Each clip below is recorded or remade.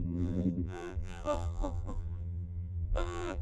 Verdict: remade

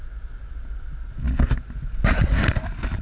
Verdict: recorded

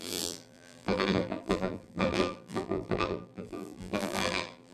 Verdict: remade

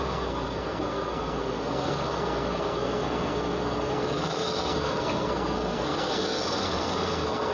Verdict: remade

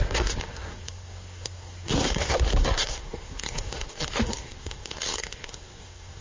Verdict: remade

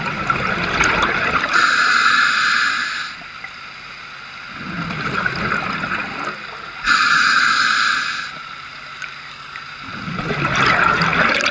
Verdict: recorded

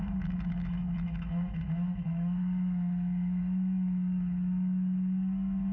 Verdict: remade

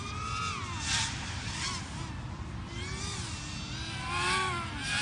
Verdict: recorded